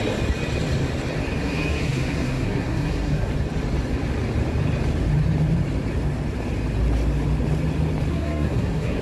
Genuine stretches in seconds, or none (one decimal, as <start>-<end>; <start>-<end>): 0.0-1.4; 3.3-8.1

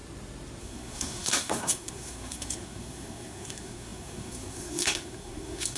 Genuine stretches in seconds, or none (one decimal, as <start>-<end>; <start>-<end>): 0.0-0.6

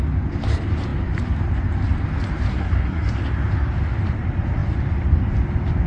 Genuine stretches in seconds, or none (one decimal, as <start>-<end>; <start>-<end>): 0.0-2.5; 3.1-5.9

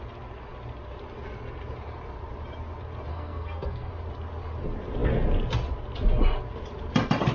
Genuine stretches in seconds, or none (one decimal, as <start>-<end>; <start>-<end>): 0.0-3.1; 3.9-7.3

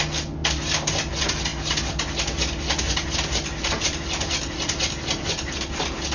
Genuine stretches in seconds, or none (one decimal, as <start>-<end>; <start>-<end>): 0.0-6.1

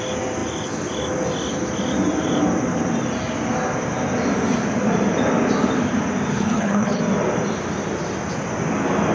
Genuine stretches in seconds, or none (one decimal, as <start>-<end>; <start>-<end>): 0.0-6.3; 7.0-9.1